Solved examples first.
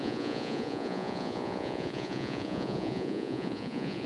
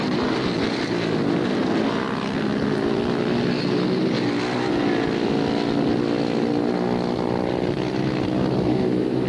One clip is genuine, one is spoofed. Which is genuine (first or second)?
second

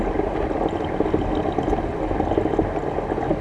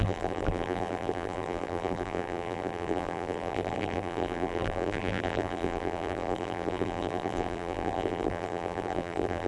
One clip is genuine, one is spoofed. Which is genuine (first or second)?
first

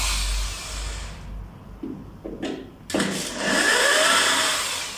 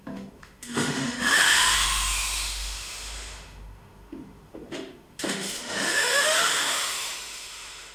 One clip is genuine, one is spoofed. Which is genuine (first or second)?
first